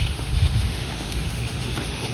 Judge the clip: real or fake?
fake